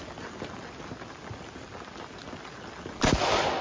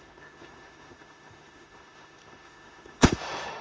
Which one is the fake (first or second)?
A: second